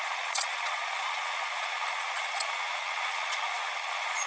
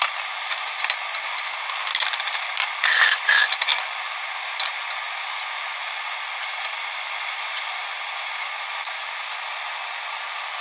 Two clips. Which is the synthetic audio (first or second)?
first